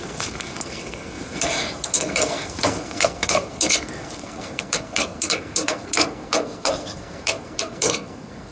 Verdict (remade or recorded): remade